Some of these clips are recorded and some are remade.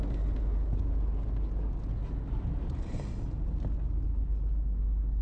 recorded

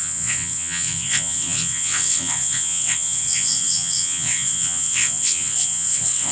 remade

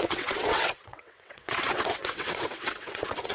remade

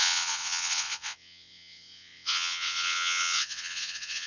remade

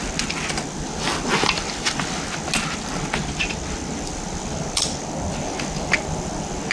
recorded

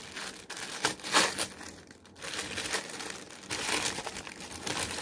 recorded